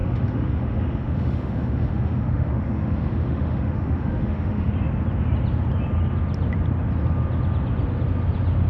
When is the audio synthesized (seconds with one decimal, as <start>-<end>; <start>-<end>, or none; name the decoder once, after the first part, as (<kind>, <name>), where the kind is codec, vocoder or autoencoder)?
0.0-4.7 (autoencoder, DAC-VAE)